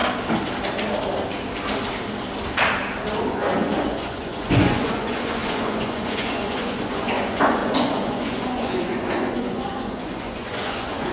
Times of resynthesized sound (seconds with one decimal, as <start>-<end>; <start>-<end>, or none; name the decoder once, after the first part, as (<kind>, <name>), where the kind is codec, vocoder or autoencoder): 3.3-11.1 (vocoder, Vocos)